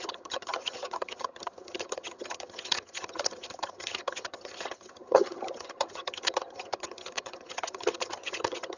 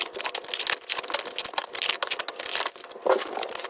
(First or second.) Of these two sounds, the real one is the second